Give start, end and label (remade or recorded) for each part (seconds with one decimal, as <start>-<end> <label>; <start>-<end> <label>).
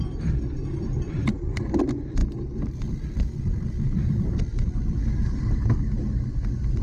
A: 0.0-6.8 recorded